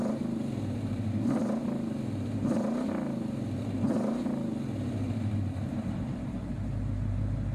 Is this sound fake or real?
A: real